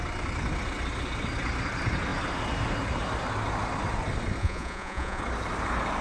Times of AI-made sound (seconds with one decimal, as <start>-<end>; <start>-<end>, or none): 4.4-5.2